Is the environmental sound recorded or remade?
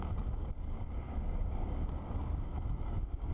remade